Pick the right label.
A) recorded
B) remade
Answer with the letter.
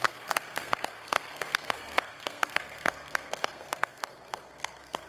B